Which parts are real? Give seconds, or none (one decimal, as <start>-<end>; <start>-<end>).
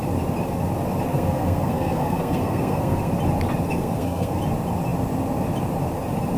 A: 0.0-1.1; 3.1-3.7; 4.4-6.4